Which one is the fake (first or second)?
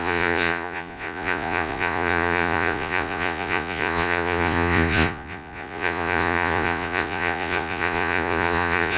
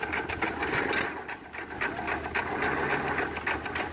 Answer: first